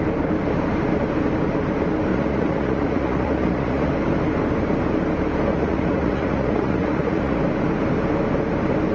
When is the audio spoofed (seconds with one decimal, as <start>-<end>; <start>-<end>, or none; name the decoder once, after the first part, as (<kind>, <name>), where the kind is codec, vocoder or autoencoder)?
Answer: 2.1-3.9 (vocoder, Vocos); 5.5-7.4